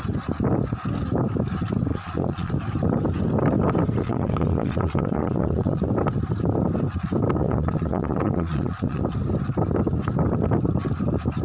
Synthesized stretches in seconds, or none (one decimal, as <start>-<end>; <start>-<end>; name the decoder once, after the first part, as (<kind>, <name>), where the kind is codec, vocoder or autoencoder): 1.9-2.5 (vocoder, Vocos); 4.0-5.8; 7.4-9.0